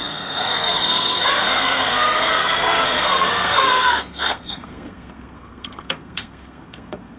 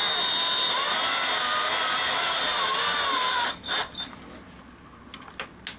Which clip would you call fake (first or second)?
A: first